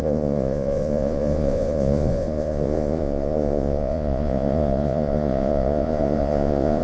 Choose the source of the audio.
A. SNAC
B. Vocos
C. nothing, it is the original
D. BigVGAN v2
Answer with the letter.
B